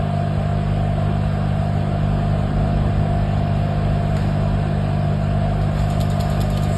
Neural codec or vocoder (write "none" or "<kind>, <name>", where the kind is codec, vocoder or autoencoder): none